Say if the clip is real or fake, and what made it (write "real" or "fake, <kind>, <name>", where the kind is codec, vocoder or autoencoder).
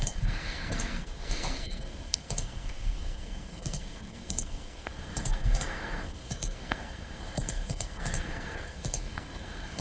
fake, codec, SNAC